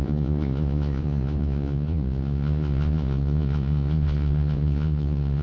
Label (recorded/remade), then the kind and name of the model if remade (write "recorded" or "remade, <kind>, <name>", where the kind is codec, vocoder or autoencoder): remade, vocoder, Vocos